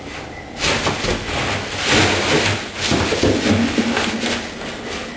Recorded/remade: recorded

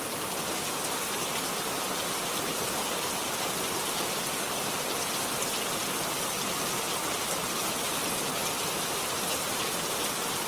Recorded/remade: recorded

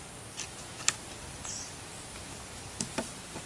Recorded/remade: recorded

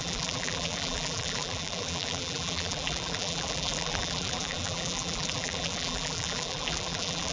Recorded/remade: remade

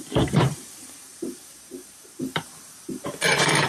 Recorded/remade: remade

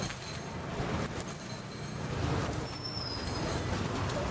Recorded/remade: recorded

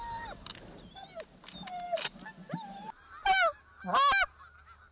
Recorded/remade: recorded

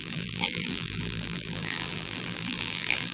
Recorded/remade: remade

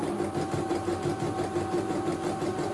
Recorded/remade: recorded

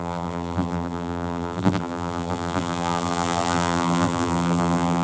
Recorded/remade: remade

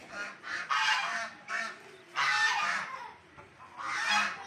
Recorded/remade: recorded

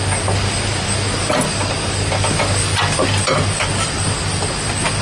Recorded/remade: recorded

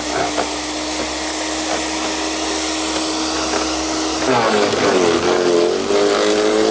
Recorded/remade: recorded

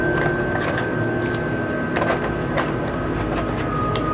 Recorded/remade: remade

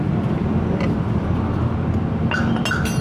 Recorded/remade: recorded